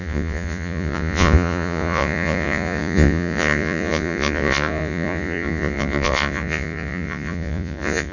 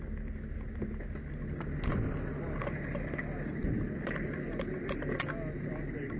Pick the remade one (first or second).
first